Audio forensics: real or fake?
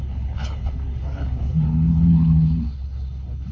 fake